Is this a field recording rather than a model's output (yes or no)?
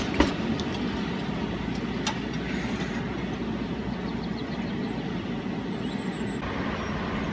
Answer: yes